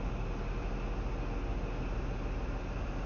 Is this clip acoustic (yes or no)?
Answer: yes